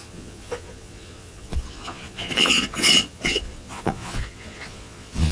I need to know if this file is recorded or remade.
remade